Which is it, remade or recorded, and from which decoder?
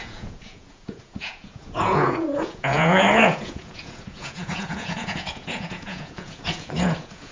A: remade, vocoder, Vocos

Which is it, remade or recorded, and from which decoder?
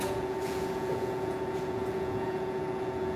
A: remade, vocoder, Vocos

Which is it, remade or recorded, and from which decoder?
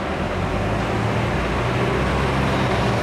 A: recorded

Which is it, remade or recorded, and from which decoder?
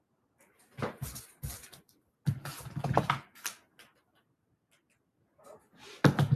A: recorded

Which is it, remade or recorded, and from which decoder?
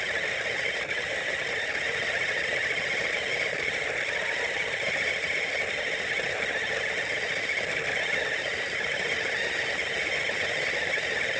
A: recorded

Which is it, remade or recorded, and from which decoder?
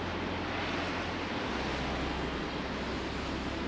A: recorded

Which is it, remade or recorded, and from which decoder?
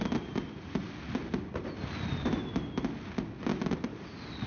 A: recorded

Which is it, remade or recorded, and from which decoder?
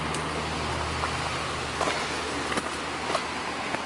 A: recorded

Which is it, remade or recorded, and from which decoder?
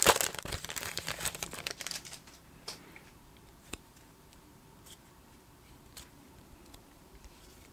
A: remade, vocoder, BigVGAN v2